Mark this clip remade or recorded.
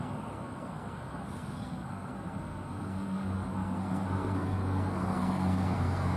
remade